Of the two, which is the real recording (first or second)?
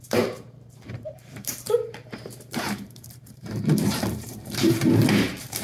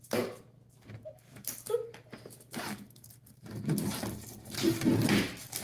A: second